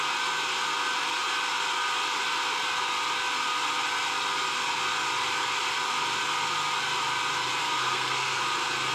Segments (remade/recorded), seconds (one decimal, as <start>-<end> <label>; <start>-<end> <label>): 0.0-7.6 recorded; 7.6-8.4 remade; 8.4-8.9 recorded